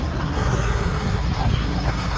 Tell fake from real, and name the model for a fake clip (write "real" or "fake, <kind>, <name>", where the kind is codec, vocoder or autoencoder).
fake, codec, SNAC